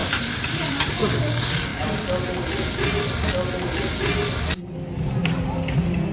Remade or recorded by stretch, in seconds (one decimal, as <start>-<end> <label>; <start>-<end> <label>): 0.0-0.8 remade; 0.8-6.1 recorded